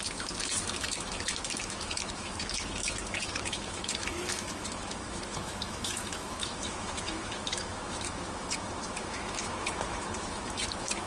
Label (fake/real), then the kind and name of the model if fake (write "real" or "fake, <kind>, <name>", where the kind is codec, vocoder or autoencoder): fake, autoencoder, DAC-VAE